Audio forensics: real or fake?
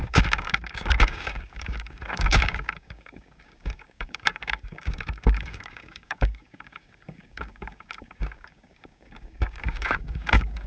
fake